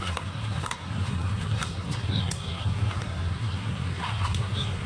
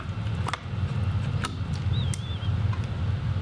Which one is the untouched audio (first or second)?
second